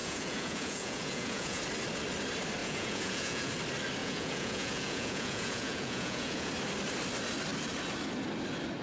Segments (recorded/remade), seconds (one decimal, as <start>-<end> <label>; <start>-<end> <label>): 0.0-1.6 remade; 1.6-2.6 recorded; 2.6-3.5 remade; 3.5-4.0 recorded; 4.0-6.5 remade; 6.5-8.8 recorded